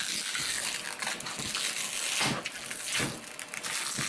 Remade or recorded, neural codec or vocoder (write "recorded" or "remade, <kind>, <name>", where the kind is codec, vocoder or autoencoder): recorded